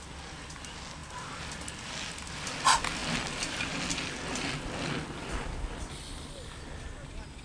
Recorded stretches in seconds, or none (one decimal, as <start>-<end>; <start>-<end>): 0.0-7.4